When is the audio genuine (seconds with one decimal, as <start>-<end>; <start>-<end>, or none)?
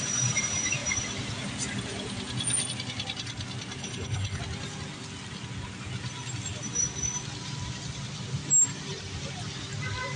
0.0-3.8; 4.4-10.2